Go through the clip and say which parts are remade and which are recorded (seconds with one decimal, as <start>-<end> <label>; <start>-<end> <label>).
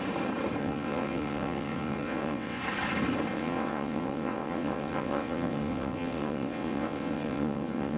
0.0-0.6 recorded; 0.6-2.6 remade; 2.6-3.3 recorded; 3.3-8.0 remade